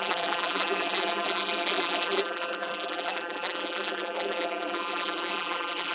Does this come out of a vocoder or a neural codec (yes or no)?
yes